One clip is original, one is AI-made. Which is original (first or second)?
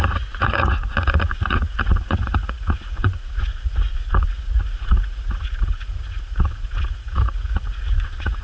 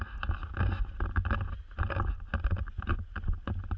second